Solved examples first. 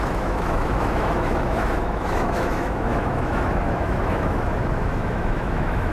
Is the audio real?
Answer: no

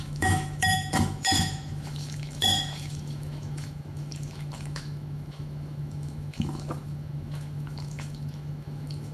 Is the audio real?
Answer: no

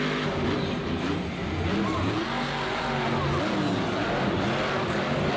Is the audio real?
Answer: yes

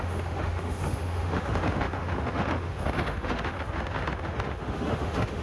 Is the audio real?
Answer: no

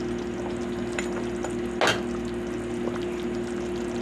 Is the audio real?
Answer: yes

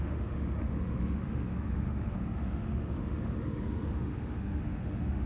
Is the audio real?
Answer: no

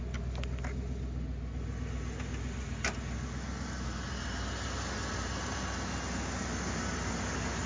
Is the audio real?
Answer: yes